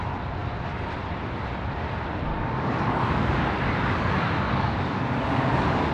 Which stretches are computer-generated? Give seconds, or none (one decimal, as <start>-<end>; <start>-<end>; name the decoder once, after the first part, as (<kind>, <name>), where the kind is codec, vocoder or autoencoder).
2.3-5.9 (codec, DAC)